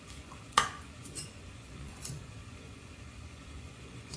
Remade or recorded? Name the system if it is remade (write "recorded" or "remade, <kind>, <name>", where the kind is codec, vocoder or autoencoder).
remade, vocoder, Vocos